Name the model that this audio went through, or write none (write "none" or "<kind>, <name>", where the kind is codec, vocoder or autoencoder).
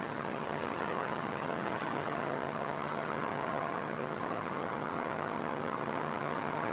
vocoder, HiFi-GAN